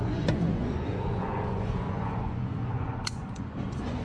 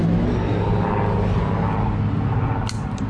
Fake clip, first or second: first